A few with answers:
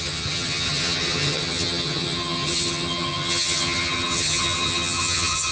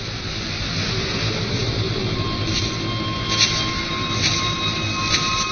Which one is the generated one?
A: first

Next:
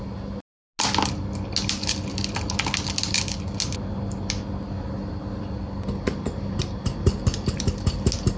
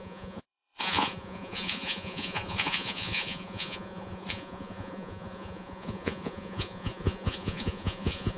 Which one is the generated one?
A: second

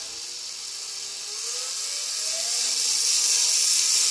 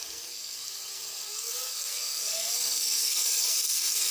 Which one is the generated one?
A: second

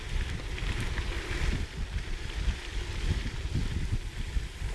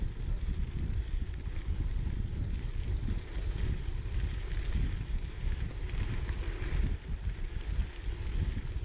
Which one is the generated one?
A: first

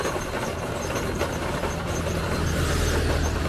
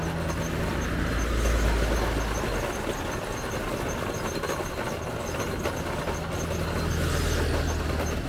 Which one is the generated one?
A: first